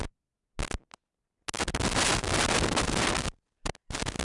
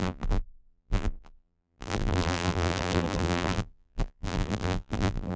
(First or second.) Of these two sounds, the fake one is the second